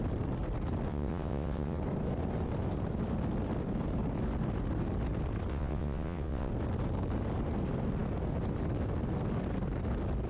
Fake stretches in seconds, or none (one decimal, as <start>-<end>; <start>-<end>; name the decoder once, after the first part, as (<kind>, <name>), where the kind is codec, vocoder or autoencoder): 0.9-1.8 (vocoder, WaveNeXt); 5.5-6.5